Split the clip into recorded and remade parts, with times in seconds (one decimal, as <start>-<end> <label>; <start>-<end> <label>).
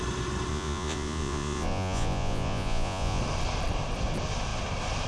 0.0-0.5 recorded; 0.5-3.2 remade; 3.2-5.1 recorded